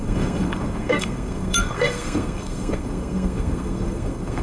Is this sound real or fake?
fake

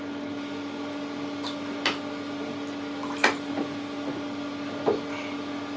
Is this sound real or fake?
real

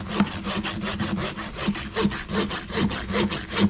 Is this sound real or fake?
real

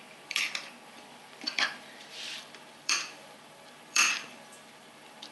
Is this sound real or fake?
fake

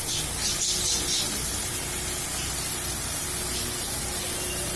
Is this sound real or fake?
real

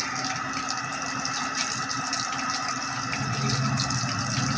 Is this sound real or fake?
real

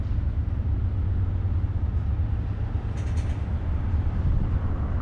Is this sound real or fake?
real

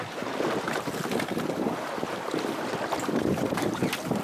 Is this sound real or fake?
real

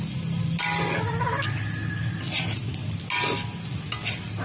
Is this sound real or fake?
real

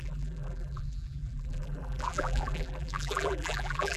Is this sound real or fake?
fake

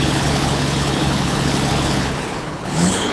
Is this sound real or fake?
fake